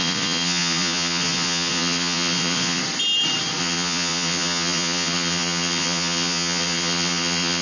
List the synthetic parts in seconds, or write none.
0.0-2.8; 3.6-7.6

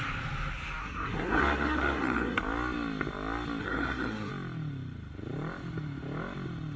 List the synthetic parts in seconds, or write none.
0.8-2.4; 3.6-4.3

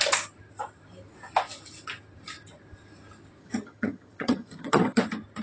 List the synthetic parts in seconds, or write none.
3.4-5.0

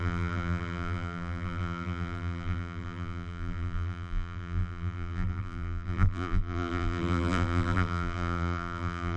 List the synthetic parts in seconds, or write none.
0.0-9.2

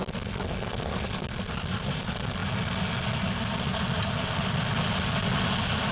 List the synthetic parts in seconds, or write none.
none

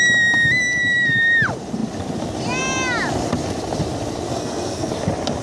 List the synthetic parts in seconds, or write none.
4.3-4.9

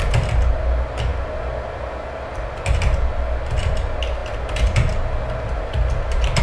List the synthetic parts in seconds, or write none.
none